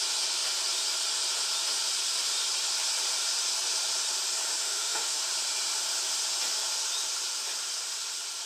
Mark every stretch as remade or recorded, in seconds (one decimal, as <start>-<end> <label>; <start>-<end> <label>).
0.0-4.6 recorded; 4.6-5.2 remade; 5.2-8.5 recorded